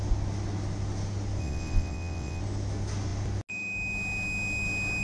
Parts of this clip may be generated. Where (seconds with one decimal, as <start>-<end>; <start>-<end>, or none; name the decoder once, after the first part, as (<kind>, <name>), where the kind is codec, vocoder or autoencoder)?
1.4-2.4 (vocoder, WaveNeXt)

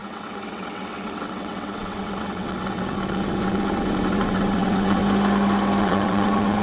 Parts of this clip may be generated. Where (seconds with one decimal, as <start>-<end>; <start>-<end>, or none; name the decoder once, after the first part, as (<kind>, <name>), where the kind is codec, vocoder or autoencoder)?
0.0-5.0 (vocoder, WaveNeXt); 5.8-6.6